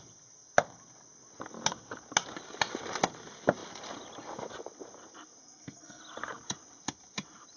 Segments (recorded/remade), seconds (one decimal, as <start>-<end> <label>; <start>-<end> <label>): 0.0-5.4 recorded; 5.4-6.0 remade; 6.0-7.6 recorded